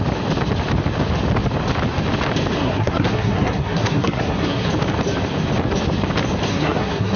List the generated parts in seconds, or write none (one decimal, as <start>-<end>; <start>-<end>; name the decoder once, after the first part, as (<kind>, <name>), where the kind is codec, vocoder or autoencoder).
2.6-4.7 (codec, SNAC); 6.5-7.2